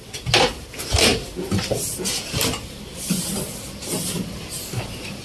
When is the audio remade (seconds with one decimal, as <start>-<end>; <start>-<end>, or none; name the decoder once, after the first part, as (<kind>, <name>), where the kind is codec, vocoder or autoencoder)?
none